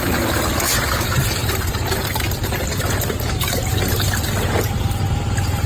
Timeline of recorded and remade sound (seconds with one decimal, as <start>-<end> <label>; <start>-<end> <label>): 0.0-5.7 recorded